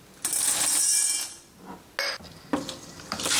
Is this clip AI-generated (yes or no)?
no